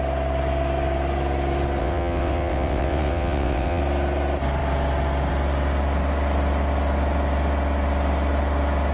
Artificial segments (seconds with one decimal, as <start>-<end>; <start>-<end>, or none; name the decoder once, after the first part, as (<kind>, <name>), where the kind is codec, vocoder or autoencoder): 1.8-3.8 (vocoder, WaveNeXt)